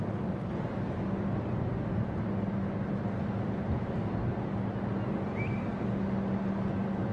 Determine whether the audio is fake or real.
real